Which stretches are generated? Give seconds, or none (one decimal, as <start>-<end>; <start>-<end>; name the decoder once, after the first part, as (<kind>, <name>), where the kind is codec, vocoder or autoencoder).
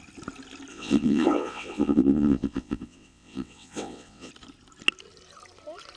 0.7-4.3 (vocoder, WaveNeXt)